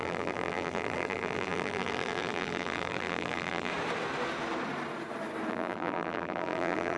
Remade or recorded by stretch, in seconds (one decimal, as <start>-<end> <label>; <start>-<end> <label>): 0.0-3.7 remade; 3.7-5.5 recorded; 5.5-7.0 remade